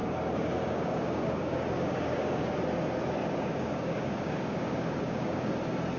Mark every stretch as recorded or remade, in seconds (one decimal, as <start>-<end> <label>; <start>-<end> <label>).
0.0-2.6 remade; 2.6-3.2 recorded; 3.2-5.5 remade; 5.5-6.0 recorded